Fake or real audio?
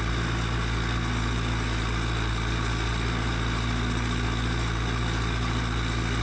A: real